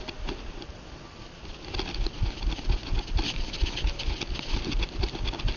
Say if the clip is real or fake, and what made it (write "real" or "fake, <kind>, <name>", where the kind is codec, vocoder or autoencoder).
real